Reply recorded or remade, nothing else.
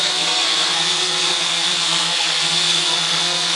remade